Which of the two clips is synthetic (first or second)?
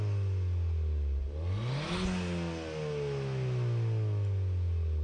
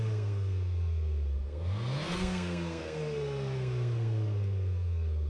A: second